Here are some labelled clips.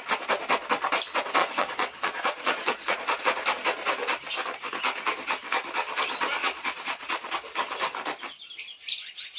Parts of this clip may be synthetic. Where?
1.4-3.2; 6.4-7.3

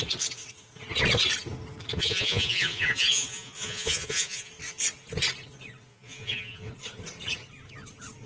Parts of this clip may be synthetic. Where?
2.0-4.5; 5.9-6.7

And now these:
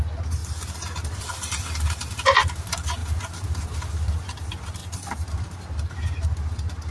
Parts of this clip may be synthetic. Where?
none

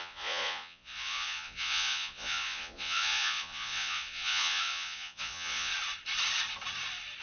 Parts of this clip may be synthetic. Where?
0.0-5.7

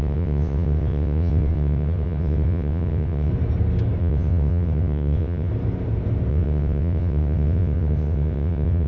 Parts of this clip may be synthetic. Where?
0.0-3.3; 4.0-5.5; 6.3-8.9

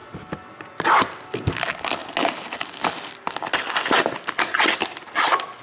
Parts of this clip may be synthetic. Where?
none